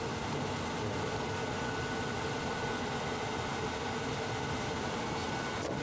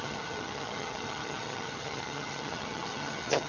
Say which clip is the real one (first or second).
first